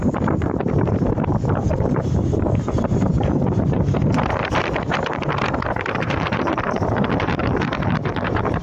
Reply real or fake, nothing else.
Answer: fake